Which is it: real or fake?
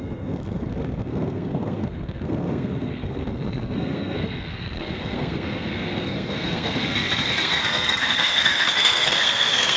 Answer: fake